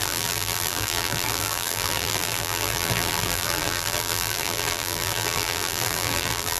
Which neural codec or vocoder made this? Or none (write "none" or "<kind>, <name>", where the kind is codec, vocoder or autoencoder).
vocoder, BigVGAN v2